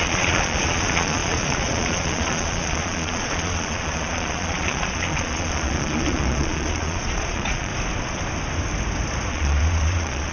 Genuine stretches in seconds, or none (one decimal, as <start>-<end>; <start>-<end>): 7.7-9.3